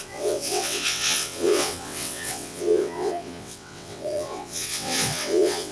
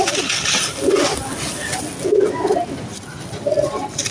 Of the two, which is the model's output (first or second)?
first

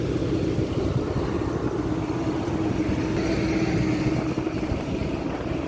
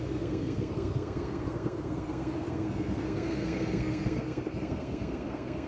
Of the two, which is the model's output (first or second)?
second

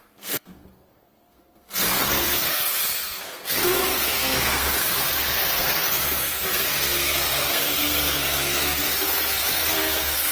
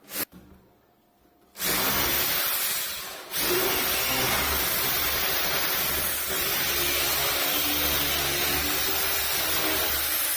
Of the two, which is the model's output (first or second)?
first